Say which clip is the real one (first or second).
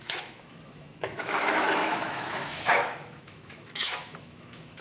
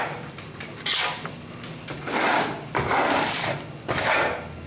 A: second